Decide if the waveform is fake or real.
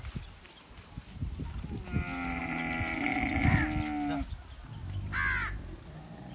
real